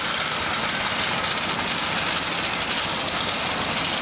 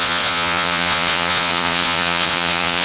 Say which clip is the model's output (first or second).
second